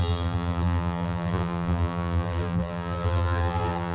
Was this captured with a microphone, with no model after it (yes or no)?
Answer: no